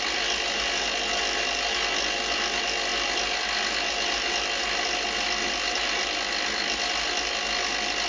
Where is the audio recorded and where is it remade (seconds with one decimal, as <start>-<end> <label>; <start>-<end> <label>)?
0.0-8.1 recorded